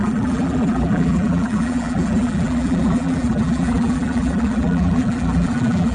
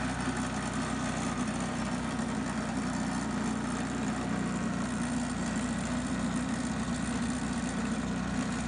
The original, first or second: second